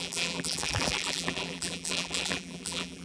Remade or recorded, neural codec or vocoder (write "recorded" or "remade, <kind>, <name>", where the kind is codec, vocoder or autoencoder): remade, vocoder, BigVGAN v2